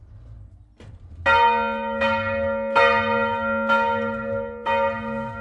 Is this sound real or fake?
real